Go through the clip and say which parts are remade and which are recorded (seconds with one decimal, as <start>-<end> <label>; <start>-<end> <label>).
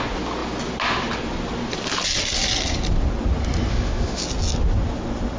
0.0-3.7 recorded; 3.7-4.2 remade; 4.2-5.4 recorded